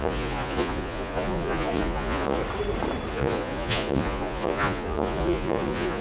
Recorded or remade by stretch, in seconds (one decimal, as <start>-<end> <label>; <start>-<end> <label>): 0.0-2.4 remade; 2.4-3.1 recorded; 3.1-6.0 remade